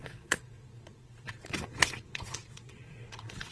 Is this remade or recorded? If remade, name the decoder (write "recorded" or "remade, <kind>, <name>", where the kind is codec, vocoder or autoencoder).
remade, vocoder, Vocos